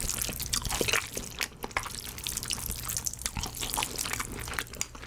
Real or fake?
real